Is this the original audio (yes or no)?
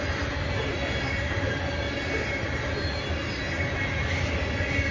yes